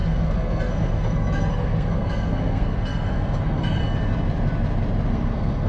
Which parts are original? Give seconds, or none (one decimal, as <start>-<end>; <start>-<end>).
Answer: 3.8-5.1